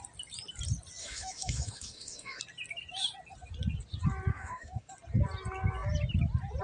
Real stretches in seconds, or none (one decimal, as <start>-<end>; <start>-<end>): 0.0-1.0; 2.4-4.3; 4.9-6.6